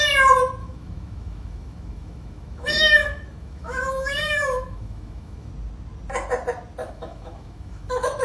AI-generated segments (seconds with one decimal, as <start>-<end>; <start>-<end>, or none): 0.6-5.5; 6.8-8.2